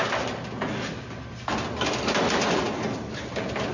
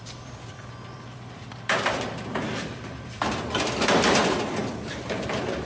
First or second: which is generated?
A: second